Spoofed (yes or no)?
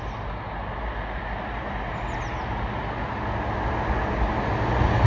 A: no